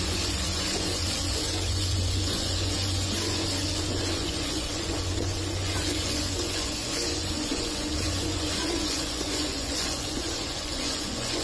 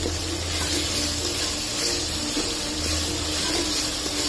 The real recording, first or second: second